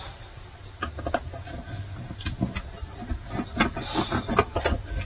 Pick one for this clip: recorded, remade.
recorded